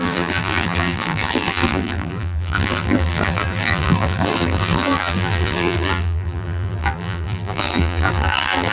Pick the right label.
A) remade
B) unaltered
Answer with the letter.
A